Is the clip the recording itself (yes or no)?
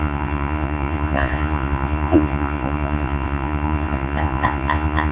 no